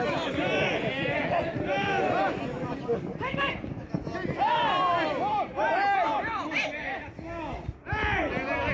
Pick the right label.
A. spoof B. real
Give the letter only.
B